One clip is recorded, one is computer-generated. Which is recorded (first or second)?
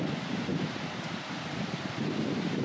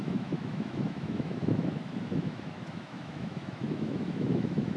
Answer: first